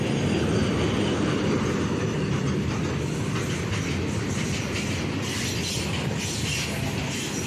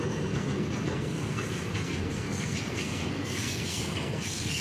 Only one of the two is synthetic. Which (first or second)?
second